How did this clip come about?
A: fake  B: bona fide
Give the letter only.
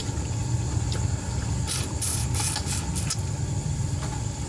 B